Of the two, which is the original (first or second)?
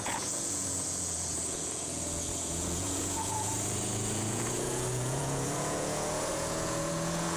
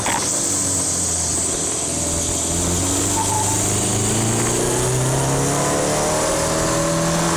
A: second